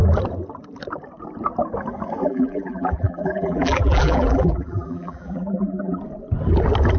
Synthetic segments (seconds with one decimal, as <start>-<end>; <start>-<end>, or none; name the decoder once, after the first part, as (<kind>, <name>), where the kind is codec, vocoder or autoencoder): 2.2-6.0 (vocoder, BigVGAN v2)